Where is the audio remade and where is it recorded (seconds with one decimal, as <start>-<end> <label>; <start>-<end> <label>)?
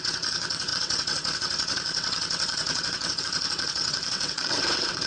0.0-5.1 remade